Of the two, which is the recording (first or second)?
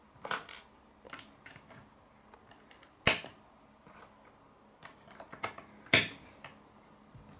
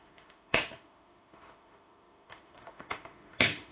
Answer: first